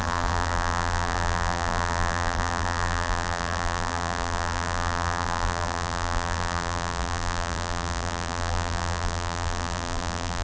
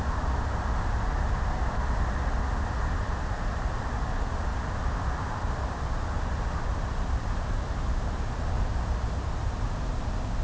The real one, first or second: second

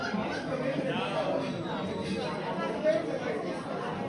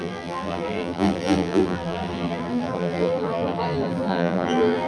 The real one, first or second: first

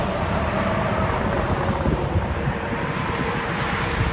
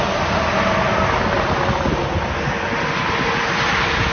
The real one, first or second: second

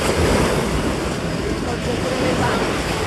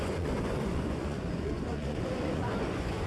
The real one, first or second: first